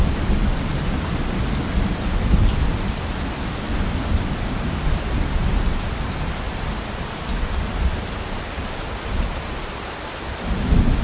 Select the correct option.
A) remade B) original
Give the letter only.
B